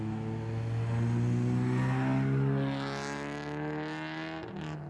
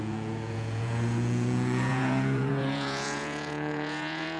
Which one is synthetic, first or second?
second